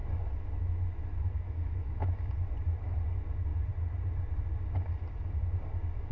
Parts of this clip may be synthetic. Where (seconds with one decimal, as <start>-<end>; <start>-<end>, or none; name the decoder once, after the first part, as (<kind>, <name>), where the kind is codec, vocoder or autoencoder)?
0.0-2.3 (autoencoder, DAC-VAE)